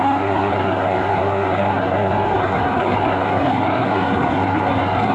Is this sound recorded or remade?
remade